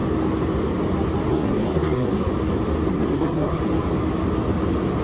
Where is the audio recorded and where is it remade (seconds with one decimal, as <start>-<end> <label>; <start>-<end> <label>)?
0.0-1.3 recorded; 1.3-2.3 remade; 2.3-2.9 recorded; 2.9-3.6 remade; 3.6-5.0 recorded